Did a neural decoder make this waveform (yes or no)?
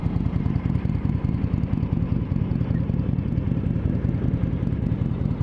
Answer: yes